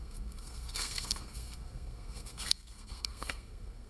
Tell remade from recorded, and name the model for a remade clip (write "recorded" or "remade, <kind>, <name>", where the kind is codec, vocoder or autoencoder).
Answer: remade, codec, SNAC